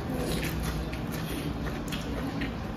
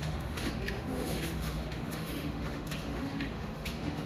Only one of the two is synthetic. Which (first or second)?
second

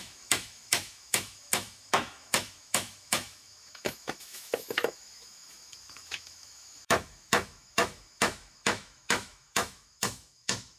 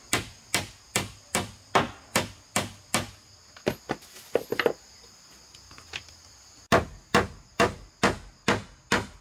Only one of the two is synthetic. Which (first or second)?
first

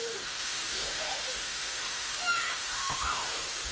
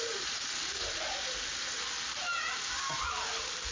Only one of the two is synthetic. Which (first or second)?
first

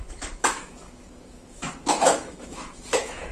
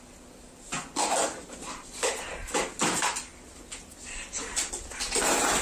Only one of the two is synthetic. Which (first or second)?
first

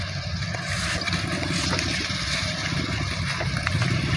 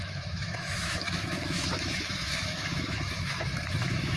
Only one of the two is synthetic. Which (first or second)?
second